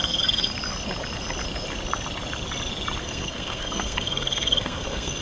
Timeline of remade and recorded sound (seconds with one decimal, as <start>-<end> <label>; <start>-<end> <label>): 0.0-0.5 remade; 0.5-3.0 recorded; 3.0-5.2 remade